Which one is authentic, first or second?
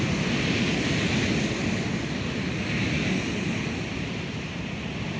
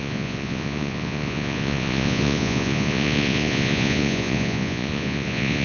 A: first